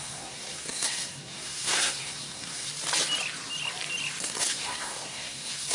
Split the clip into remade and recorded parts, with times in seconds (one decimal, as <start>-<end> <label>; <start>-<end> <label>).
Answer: 0.0-2.7 remade; 2.7-4.2 recorded; 4.2-5.7 remade